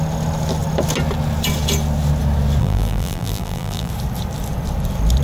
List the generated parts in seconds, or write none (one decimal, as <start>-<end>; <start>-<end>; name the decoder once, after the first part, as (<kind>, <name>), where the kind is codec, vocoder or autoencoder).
2.6-3.9 (vocoder, BigVGAN v2)